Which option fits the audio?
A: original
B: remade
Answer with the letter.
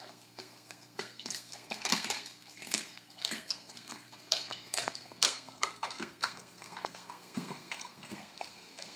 B